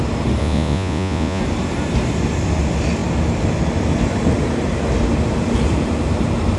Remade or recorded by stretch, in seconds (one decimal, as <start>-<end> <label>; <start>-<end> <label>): 0.0-0.4 recorded; 0.4-1.4 remade; 1.4-6.6 recorded